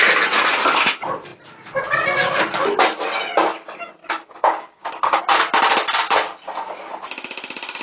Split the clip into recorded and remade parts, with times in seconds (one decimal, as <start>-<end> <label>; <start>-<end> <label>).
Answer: 0.0-4.0 recorded; 4.0-5.2 remade; 5.2-7.8 recorded